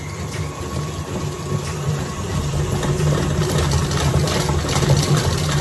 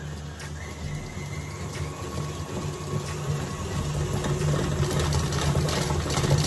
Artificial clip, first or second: first